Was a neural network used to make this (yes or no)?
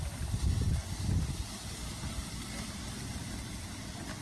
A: no